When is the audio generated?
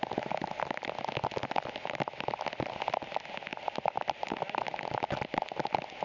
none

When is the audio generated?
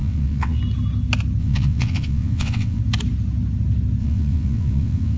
0.0-0.6 (vocoder, WaveNeXt); 1.4-2.8; 4.0-5.2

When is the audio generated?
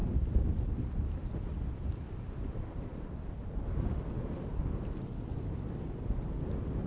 none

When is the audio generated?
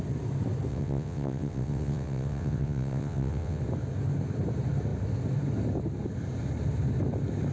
0.7-3.6 (vocoder, WaveNeXt)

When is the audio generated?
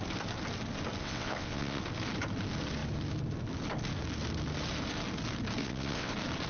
1.0-1.8 (vocoder, WaveNeXt); 5.6-6.1